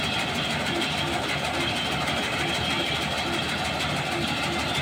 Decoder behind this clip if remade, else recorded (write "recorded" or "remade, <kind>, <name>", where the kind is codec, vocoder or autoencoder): recorded